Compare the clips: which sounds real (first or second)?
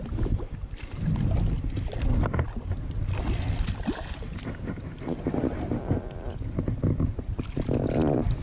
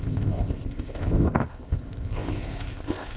first